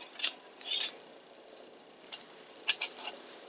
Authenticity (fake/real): real